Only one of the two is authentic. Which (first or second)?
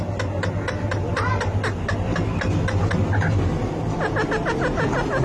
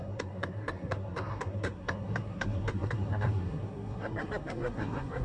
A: first